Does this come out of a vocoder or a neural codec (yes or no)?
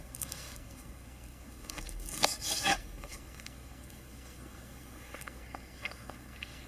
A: yes